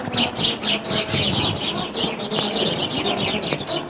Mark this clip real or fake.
real